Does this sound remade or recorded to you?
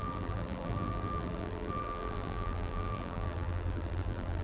remade